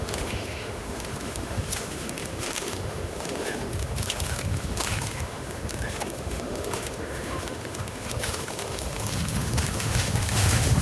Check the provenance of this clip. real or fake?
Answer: fake